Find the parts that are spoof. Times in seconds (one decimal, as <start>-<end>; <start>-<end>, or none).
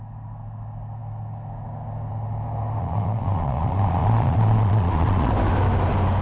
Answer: 2.8-5.3